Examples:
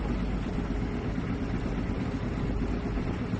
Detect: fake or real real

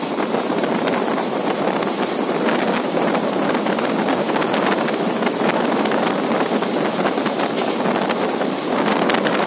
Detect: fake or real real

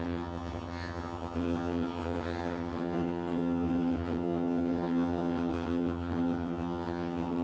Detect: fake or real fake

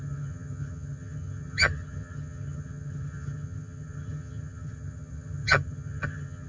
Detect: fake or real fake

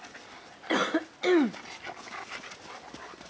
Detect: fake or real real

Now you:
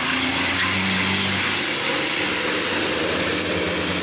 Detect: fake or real real